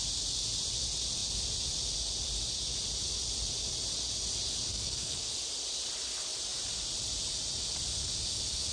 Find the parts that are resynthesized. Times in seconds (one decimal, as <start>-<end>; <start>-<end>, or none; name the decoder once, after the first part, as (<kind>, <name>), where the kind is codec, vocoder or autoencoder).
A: 4.7-5.3 (codec, SNAC)